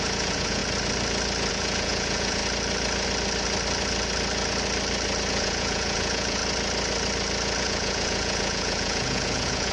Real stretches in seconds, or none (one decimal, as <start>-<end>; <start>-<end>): 0.6-1.5; 2.4-5.3; 6.4-7.6